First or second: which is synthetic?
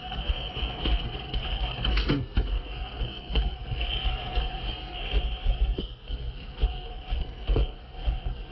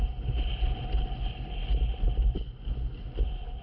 first